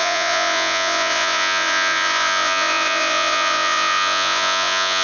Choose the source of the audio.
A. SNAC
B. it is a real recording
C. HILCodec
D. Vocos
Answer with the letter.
D